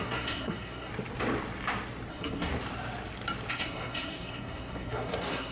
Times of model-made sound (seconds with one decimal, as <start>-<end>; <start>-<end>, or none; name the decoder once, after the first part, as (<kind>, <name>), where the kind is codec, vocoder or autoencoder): 0.0-0.9 (codec, SNAC); 2.1-2.5; 3.5-5.5